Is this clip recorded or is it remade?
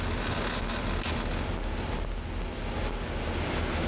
recorded